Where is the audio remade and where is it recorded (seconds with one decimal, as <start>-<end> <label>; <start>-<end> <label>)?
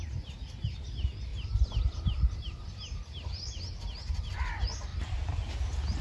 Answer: 0.0-6.0 recorded